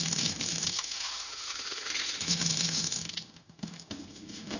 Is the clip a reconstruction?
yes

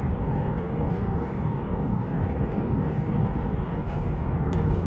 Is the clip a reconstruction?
yes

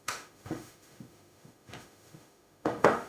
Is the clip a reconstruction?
yes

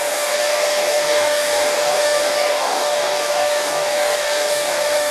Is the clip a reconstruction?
yes